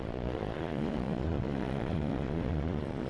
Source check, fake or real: fake